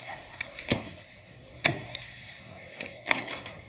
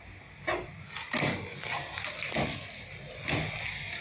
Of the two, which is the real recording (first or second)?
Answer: second